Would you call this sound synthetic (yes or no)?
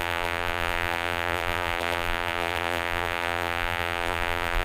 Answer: yes